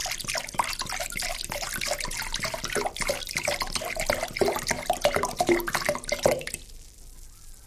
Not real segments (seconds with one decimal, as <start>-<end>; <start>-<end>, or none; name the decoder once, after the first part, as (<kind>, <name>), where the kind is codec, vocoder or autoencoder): none

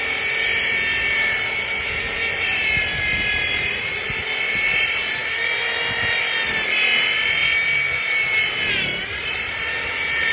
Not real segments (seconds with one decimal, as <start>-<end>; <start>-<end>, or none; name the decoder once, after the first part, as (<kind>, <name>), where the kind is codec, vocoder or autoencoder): none

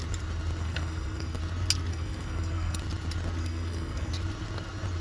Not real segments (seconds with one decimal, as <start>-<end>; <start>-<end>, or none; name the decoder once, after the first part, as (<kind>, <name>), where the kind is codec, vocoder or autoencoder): 0.6-1.4 (codec, SNAC); 1.9-2.8; 3.4-4.1

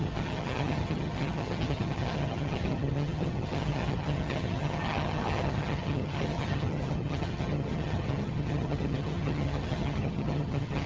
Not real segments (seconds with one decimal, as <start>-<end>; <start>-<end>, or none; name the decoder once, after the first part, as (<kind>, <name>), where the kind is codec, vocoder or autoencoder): 0.0-10.9 (vocoder, HiFi-GAN)

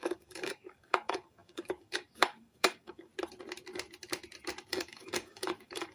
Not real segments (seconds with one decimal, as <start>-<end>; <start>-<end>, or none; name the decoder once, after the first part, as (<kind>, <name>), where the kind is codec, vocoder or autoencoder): 0.0-3.1 (codec, DAC); 4.7-5.9